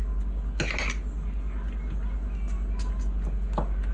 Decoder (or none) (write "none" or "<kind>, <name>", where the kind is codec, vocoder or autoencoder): none